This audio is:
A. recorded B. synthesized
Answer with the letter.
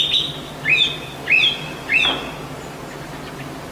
A